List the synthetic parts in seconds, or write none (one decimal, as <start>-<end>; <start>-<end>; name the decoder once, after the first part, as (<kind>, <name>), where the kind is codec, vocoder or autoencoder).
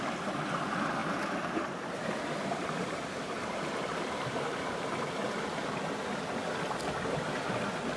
1.0-4.9 (vocoder, BigVGAN v2)